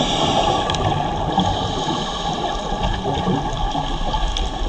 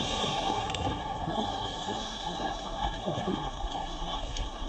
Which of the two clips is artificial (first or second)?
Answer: second